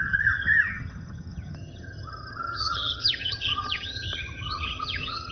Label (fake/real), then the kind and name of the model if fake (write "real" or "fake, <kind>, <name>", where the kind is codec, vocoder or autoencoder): fake, vocoder, HiFi-GAN